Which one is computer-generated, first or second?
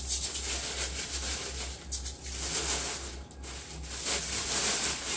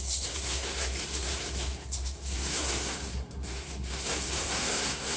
second